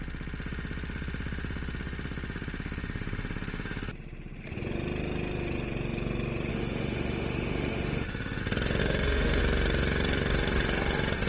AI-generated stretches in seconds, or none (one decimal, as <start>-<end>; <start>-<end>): 6.5-8.4; 8.8-9.4